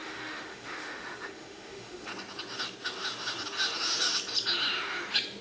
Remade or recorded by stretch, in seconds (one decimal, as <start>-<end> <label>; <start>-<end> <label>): 0.0-2.1 remade; 2.1-5.4 recorded